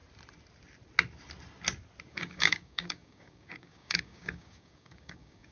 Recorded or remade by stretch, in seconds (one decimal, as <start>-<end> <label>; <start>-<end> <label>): 0.0-2.1 recorded; 2.1-5.5 remade